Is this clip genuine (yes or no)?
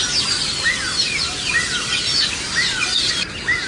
yes